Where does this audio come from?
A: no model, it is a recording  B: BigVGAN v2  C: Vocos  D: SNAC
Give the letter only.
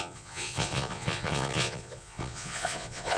C